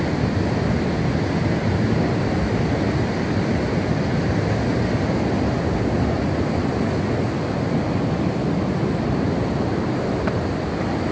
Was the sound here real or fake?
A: real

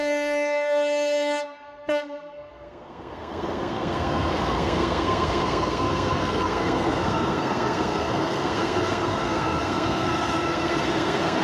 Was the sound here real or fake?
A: fake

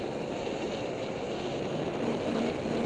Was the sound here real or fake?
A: real